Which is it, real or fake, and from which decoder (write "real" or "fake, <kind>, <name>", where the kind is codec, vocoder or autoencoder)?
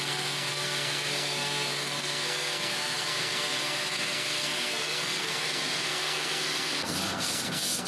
fake, codec, SNAC